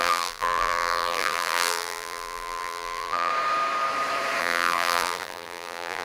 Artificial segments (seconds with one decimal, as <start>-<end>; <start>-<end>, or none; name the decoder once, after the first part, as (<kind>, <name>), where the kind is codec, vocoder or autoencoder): 0.0-3.3 (vocoder, BigVGAN v2); 4.4-6.0